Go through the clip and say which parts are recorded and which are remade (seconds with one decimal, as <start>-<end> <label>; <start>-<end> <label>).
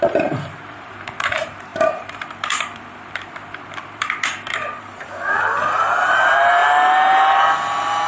0.0-6.6 remade; 6.6-8.1 recorded